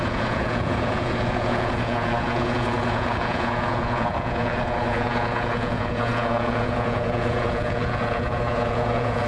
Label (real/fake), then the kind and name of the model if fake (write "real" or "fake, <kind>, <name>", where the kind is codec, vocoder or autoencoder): fake, vocoder, Vocos